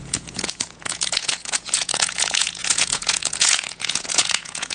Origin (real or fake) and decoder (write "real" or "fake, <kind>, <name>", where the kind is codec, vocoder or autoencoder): fake, vocoder, Vocos